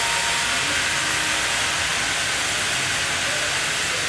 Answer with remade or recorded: recorded